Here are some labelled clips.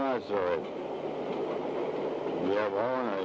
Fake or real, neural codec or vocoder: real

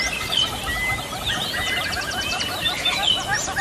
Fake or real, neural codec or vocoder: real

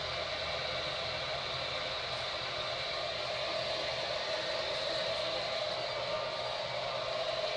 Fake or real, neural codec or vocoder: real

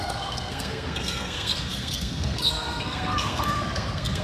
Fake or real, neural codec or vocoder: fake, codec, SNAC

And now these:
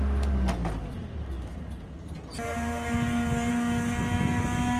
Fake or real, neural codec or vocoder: real